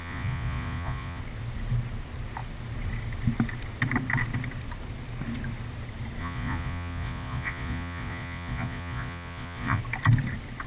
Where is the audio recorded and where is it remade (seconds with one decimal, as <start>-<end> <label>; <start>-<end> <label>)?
0.0-1.2 remade; 1.2-6.2 recorded; 6.2-9.8 remade; 9.8-10.7 recorded